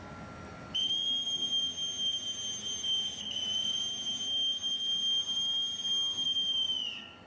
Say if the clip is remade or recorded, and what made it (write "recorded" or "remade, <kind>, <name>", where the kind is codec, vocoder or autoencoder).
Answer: recorded